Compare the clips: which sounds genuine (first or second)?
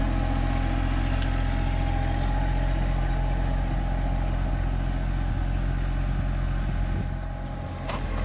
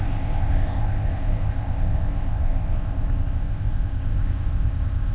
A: first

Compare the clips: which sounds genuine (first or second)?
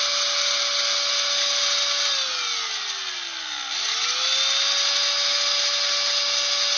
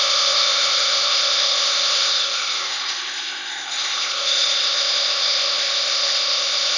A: first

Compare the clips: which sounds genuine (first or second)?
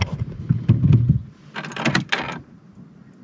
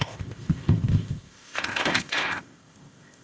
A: first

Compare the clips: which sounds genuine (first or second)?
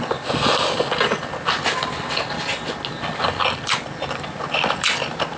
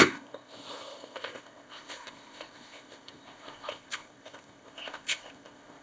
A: first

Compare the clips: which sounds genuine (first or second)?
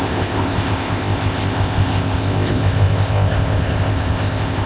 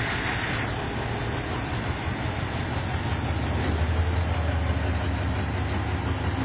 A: second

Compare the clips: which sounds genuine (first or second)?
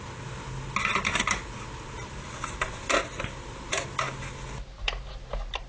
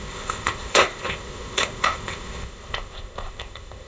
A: first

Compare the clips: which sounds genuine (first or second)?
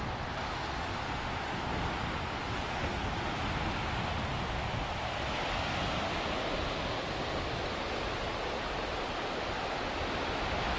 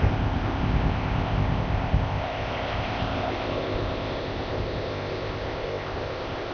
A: first